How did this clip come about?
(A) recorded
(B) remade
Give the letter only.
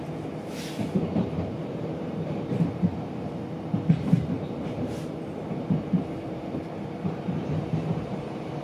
B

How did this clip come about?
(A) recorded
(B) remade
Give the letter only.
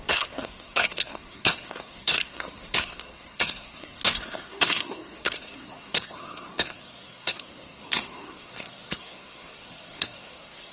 B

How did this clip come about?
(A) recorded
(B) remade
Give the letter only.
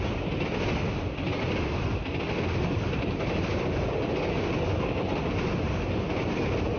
A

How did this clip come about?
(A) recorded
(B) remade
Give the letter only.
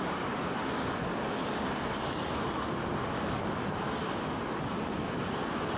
A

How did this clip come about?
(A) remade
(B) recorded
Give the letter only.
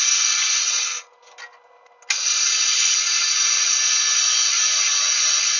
B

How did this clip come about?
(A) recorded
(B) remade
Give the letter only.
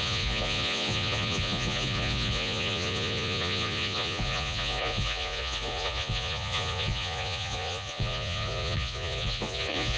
B